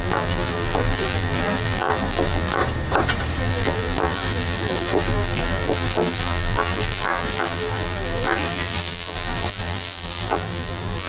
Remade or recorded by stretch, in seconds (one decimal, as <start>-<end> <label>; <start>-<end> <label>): 0.0-2.6 remade; 2.6-3.4 recorded; 3.4-11.1 remade

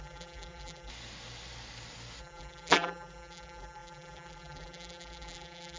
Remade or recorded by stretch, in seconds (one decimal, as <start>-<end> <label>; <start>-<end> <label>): 0.0-0.9 remade; 0.9-2.2 recorded; 2.2-5.8 remade

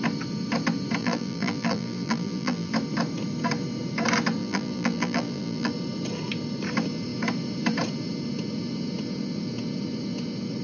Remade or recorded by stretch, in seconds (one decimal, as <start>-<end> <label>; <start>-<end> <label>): 0.0-1.0 recorded; 1.0-2.7 remade; 2.7-4.4 recorded; 4.4-5.7 remade; 5.7-10.6 recorded

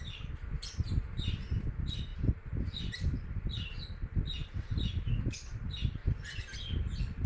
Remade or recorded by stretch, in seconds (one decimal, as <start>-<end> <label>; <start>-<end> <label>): 0.0-4.4 recorded; 4.4-5.6 remade; 5.6-7.3 recorded

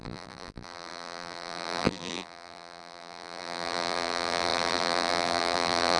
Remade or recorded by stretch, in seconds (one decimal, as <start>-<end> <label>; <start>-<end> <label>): 0.0-6.0 remade

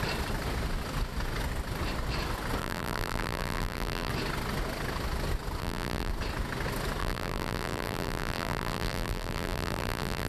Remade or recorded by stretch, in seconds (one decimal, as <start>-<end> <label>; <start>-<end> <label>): 0.0-2.6 recorded; 2.6-4.1 remade; 4.1-5.6 recorded; 5.6-6.1 remade; 6.1-7.0 recorded; 7.0-10.3 remade

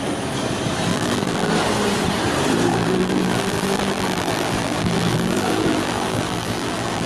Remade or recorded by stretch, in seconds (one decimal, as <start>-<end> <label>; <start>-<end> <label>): 0.0-0.9 recorded; 0.9-1.5 remade; 1.5-2.7 recorded; 2.7-7.1 remade

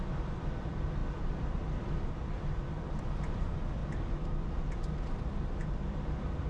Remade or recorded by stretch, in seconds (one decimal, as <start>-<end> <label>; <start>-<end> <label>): 0.0-3.8 remade; 3.8-5.4 recorded; 5.4-6.5 remade